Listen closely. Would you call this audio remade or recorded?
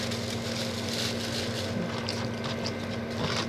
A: recorded